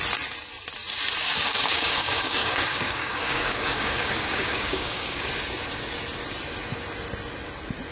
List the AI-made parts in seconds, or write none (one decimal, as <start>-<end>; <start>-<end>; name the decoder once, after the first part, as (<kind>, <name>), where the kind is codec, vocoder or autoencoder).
1.2-5.3 (codec, DAC)